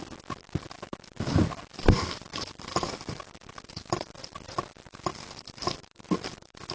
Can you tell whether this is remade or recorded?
recorded